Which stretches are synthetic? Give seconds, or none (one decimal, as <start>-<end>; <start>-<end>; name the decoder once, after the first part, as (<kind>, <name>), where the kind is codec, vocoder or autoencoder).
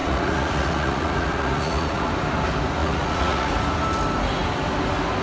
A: 0.0-2.1 (vocoder, Vocos); 2.8-3.5